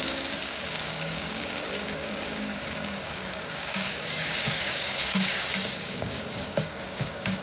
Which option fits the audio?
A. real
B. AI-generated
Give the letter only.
B